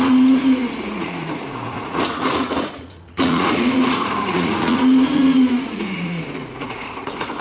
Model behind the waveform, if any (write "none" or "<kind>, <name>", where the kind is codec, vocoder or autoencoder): vocoder, Vocos